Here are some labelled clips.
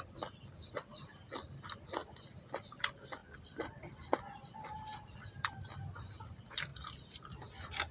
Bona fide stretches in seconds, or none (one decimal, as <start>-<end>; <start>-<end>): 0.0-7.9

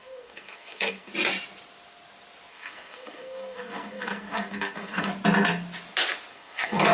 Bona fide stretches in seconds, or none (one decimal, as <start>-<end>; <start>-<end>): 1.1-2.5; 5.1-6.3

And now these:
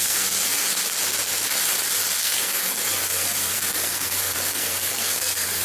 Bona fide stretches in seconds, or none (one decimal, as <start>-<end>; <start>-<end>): 0.8-2.2

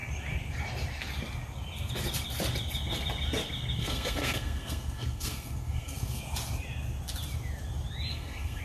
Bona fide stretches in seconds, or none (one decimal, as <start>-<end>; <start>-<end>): 0.0-3.8; 6.2-8.1

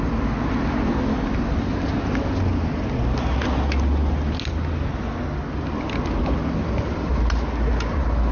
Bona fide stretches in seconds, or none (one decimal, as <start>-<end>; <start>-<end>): 0.0-8.3